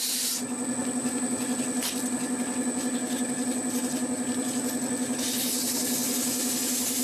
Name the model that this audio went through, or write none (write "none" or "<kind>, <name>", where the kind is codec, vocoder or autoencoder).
none